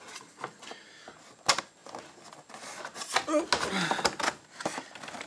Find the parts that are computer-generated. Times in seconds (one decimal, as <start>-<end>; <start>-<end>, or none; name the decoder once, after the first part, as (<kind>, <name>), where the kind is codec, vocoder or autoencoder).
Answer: none